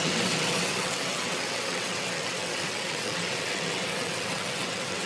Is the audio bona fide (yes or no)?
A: no